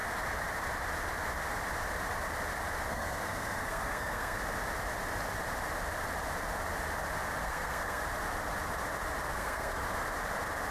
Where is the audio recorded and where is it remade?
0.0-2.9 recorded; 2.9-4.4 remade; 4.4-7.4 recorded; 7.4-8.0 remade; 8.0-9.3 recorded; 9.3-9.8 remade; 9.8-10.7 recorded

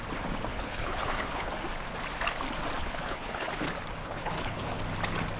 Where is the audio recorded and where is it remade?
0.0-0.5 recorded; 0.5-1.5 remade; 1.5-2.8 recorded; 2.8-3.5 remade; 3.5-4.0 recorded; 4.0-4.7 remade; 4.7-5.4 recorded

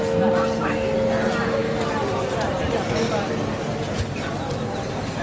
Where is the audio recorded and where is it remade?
0.0-5.2 recorded

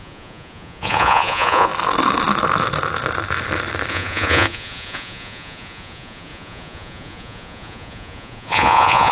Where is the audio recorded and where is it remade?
0.0-1.7 remade; 1.7-3.9 recorded; 3.9-9.1 remade

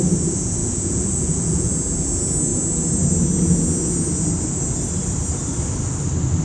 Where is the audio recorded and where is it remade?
0.0-0.6 recorded; 0.6-1.7 remade; 1.7-6.4 recorded